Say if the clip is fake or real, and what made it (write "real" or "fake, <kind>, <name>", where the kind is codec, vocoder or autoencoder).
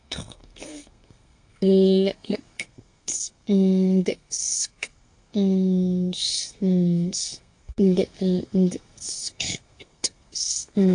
fake, codec, SNAC